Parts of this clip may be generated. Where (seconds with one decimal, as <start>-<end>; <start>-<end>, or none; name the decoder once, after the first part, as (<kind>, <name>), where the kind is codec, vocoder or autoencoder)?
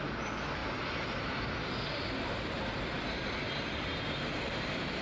none